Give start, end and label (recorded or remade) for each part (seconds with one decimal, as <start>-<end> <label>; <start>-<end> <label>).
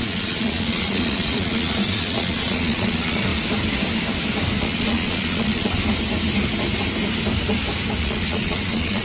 0.0-3.3 remade; 3.3-4.6 recorded; 4.6-5.8 remade; 5.8-8.0 recorded; 8.0-9.0 remade